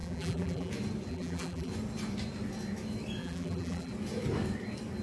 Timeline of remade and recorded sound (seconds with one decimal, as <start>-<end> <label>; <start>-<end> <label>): 0.0-0.7 remade; 0.7-1.1 recorded; 1.1-1.7 remade; 1.7-3.2 recorded; 3.2-3.9 remade; 3.9-5.0 recorded